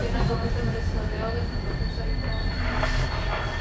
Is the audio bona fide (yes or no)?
yes